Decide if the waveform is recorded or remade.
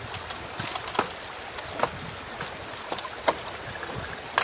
recorded